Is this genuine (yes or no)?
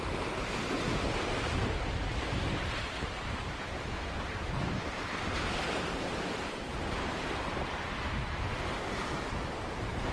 no